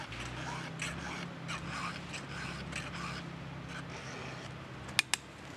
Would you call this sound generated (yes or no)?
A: no